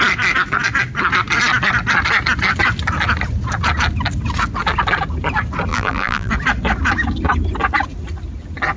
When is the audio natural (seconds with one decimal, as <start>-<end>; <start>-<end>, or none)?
0.0-5.7; 6.3-8.8